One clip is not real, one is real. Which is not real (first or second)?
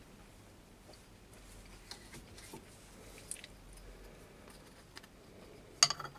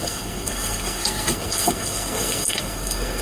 second